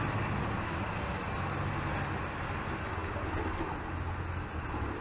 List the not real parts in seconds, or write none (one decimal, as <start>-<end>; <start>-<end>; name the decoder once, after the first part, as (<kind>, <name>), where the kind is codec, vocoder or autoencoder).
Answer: none